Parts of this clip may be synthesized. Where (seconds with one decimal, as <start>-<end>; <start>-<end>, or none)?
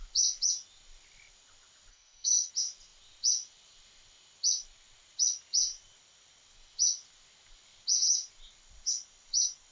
1.9-2.5